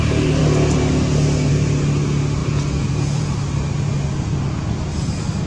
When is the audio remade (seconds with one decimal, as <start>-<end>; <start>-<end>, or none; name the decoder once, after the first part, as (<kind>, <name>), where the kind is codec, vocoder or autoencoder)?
2.4-3.3 (vocoder, Vocos)